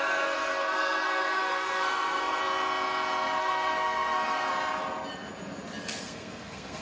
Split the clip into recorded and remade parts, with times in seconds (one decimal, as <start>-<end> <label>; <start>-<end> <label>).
0.0-2.4 remade; 2.4-3.4 recorded; 3.4-4.5 remade; 4.5-6.0 recorded; 6.0-6.8 remade